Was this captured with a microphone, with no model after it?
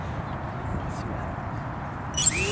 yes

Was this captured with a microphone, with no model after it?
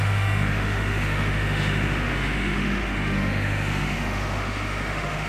no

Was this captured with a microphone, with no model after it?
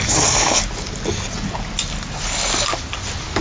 yes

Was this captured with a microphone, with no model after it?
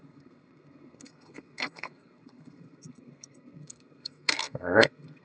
no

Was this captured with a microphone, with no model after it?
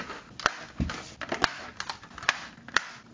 yes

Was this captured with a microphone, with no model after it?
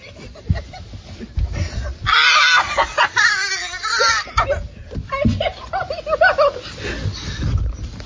yes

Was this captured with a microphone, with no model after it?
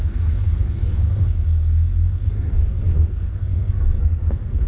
no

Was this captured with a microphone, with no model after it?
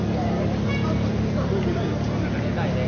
yes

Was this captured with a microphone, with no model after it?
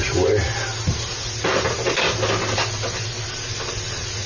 yes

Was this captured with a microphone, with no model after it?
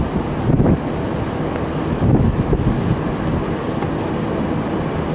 yes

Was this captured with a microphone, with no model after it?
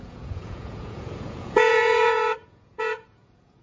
no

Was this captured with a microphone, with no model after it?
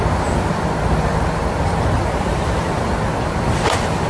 yes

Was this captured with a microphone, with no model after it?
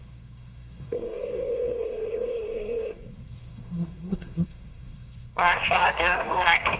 no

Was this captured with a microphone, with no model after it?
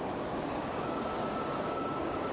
no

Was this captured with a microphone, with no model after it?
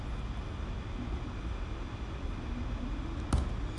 yes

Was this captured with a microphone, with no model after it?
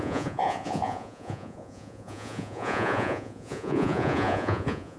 no